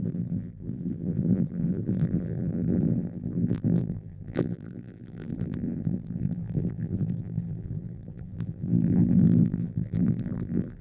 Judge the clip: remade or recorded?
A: remade